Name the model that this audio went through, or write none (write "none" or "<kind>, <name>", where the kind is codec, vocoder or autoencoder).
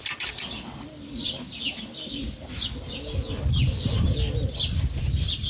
none